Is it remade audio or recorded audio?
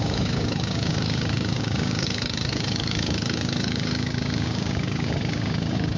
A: remade